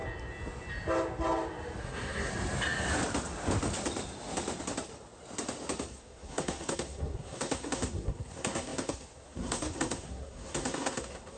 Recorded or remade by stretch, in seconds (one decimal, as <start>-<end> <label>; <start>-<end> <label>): 0.0-1.8 recorded; 1.8-2.3 remade; 2.3-5.9 recorded; 5.9-11.4 remade